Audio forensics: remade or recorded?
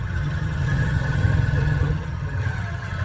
remade